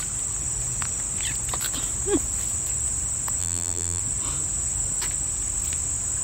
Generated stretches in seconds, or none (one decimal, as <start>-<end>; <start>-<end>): 3.4-4.0